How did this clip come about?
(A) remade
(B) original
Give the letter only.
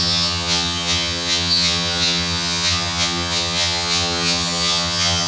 A